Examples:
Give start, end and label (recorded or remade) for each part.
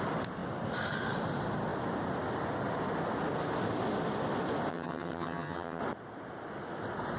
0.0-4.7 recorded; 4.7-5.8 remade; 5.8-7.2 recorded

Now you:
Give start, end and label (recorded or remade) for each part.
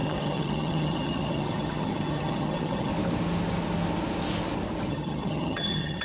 0.0-2.9 remade; 2.9-4.9 recorded; 4.9-6.0 remade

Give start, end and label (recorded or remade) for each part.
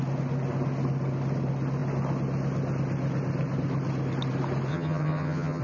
0.0-4.7 recorded; 4.7-5.6 remade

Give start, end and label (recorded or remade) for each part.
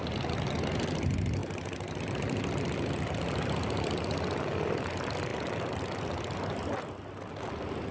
0.0-7.9 recorded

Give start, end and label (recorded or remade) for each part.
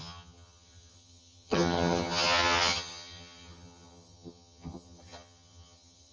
0.0-6.1 remade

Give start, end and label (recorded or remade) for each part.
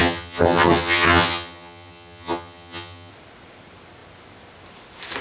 0.0-3.1 remade; 3.1-5.2 recorded